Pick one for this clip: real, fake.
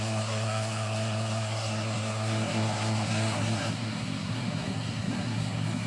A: fake